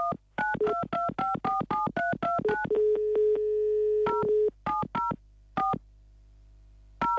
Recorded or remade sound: recorded